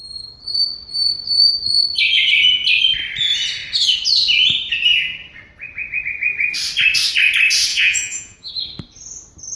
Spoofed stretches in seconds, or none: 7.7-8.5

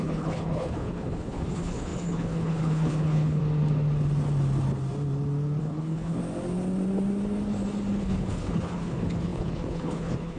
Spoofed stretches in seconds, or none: 0.0-3.4; 5.6-6.2; 8.0-10.4

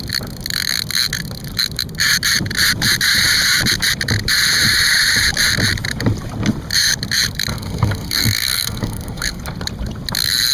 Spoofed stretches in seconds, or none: 7.5-9.4

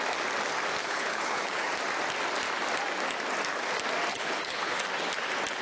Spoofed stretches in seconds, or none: 0.8-1.7; 4.1-4.8

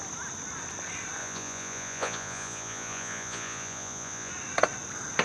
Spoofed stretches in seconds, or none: 1.2-4.3